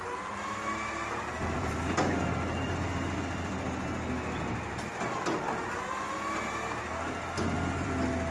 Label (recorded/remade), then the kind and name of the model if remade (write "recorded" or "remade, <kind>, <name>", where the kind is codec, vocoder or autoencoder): remade, vocoder, BigVGAN v2